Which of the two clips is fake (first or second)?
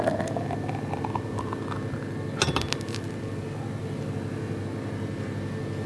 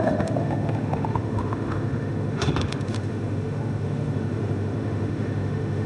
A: second